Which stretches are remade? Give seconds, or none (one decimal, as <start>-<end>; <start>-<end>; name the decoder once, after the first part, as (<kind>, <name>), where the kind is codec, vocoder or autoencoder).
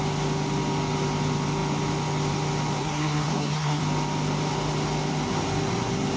2.8-3.8 (codec, SNAC)